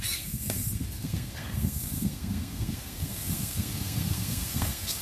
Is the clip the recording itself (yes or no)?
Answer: no